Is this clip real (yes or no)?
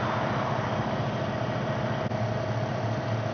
yes